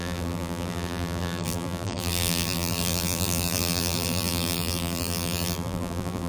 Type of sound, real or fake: fake